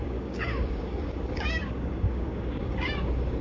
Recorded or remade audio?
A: remade